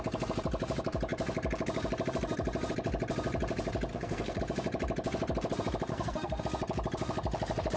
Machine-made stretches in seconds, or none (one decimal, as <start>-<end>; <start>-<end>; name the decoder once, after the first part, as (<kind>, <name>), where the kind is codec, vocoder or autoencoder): 3.9-4.4 (codec, SNAC); 5.9-6.4